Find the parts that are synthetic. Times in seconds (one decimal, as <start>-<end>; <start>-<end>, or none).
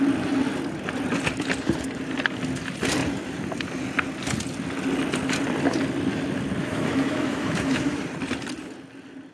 6.6-8.0